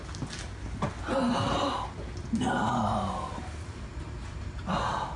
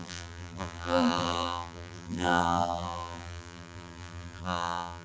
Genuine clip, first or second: first